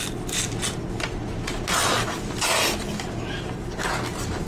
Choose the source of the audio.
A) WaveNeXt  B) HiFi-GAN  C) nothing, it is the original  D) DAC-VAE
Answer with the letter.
C